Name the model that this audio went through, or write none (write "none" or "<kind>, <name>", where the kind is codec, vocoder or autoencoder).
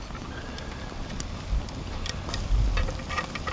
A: none